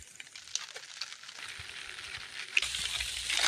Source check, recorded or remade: recorded